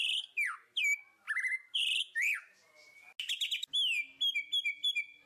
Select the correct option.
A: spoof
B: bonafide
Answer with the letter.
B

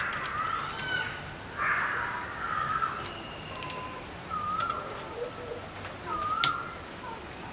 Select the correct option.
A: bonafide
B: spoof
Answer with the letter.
A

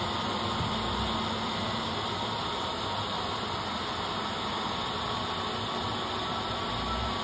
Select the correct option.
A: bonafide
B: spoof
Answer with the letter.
A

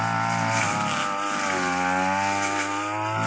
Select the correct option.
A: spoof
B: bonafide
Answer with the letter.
B